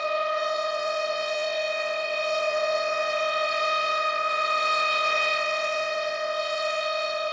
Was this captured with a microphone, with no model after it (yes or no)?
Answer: no